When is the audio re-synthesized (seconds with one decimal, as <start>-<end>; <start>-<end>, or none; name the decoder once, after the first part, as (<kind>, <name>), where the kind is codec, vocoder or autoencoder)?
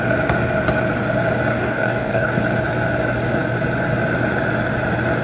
1.5-2.3 (codec, DAC)